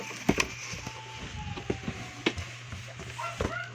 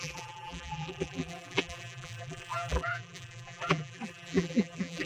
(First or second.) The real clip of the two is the first